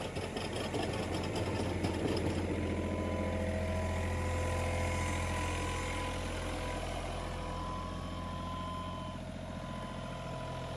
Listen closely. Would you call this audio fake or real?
real